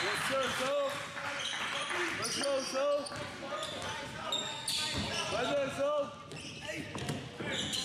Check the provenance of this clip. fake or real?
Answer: real